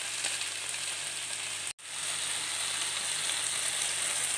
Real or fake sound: real